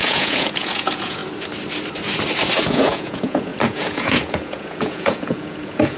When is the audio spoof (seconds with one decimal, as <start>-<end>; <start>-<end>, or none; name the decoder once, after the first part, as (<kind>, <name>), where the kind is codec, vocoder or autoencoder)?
0.0-1.2 (vocoder, Vocos); 2.7-6.0